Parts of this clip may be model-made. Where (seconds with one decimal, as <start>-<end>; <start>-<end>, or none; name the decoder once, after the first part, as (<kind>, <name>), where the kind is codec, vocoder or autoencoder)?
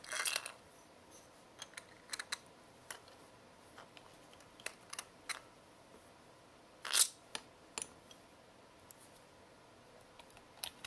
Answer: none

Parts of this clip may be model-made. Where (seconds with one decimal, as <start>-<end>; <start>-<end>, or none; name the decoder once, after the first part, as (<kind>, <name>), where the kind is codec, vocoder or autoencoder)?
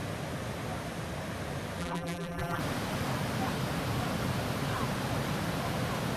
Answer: 1.8-2.6 (vocoder, BigVGAN v2)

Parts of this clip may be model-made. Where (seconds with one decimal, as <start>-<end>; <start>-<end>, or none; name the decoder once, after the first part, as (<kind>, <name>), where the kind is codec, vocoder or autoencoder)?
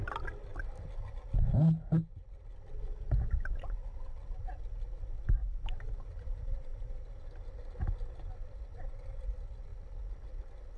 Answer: 5.4-7.0 (vocoder, BigVGAN v2)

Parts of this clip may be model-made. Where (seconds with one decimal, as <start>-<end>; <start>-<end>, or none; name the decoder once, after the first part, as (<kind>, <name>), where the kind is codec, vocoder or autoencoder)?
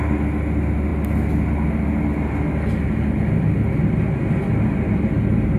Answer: none